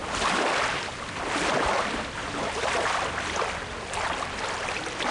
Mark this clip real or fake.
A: real